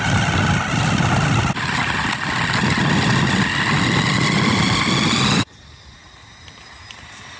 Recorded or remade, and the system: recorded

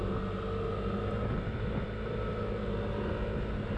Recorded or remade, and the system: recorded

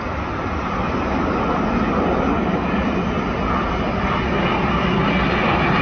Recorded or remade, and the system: recorded